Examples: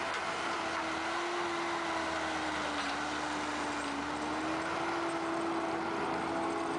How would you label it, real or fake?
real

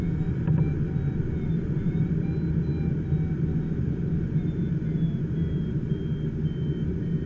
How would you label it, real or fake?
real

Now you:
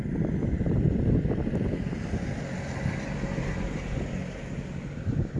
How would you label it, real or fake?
real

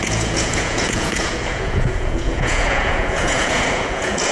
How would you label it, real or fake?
fake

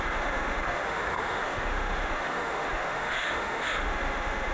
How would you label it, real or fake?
fake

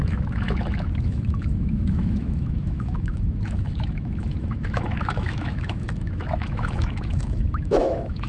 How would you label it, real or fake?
fake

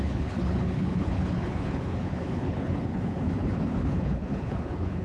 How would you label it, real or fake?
fake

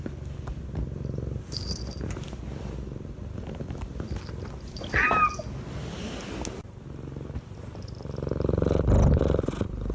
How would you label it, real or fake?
real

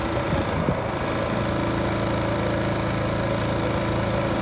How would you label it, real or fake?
real